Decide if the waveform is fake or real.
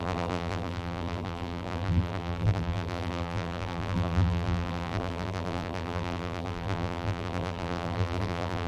fake